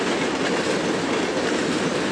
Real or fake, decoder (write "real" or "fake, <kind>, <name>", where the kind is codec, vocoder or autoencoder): real